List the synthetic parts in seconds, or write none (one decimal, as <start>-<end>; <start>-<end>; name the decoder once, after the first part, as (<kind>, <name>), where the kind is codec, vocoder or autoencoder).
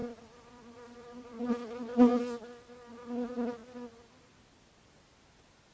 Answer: 0.0-1.4 (vocoder, BigVGAN v2)